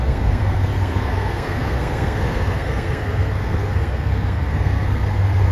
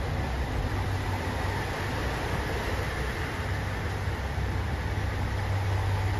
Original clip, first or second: second